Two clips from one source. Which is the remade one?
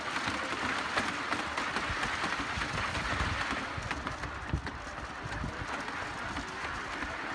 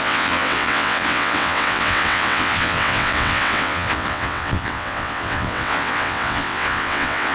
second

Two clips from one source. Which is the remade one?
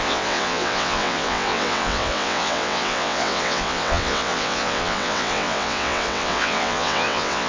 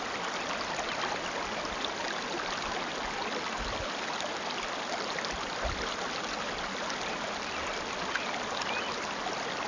first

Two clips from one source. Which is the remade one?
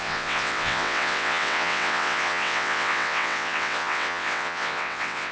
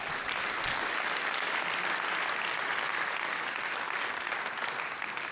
first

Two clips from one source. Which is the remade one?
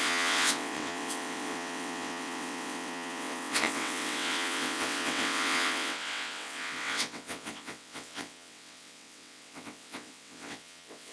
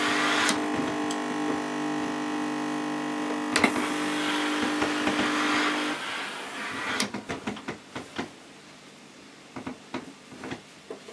first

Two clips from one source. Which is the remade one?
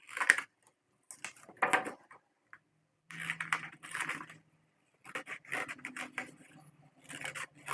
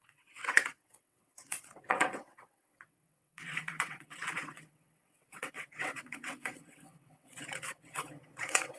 second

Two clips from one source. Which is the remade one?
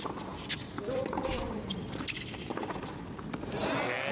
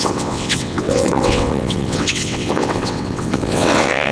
second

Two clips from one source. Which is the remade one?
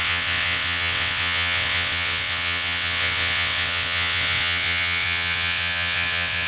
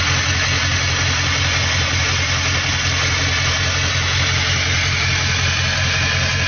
first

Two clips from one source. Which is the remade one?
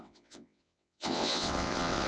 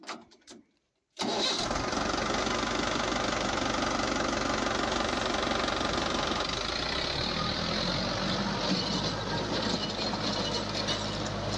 first